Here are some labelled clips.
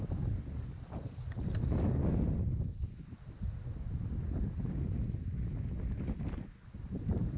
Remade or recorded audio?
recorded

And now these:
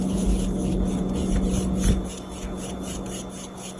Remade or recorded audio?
remade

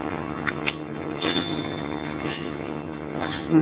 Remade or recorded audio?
remade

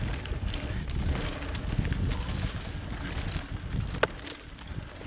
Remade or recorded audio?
recorded